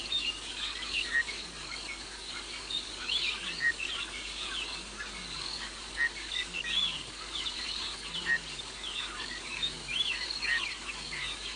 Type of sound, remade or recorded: remade